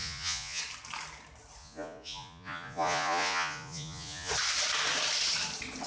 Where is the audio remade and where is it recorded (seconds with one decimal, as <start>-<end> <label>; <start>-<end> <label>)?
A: 0.0-0.6 remade; 0.6-1.6 recorded; 1.6-4.3 remade; 4.3-5.9 recorded